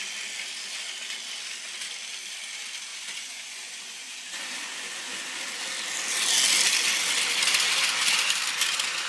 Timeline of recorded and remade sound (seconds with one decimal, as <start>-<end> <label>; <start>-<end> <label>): 0.0-2.9 recorded; 2.9-5.3 remade; 5.3-9.1 recorded